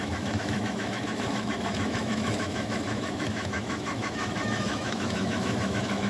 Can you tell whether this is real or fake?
fake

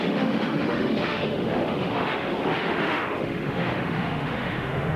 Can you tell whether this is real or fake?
fake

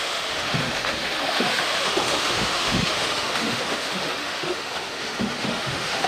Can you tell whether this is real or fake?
fake